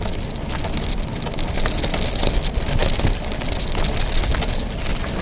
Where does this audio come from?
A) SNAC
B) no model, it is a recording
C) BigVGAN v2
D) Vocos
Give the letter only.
B